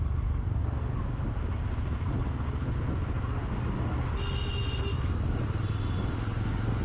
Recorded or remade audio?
recorded